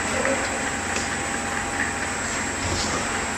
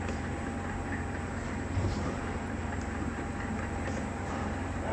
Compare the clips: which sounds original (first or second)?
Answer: first